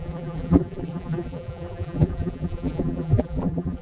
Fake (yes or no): yes